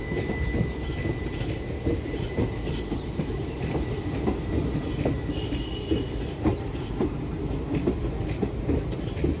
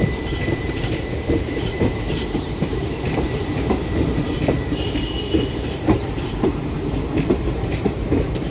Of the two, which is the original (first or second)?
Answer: first